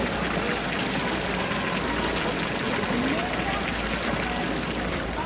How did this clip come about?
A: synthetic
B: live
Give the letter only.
B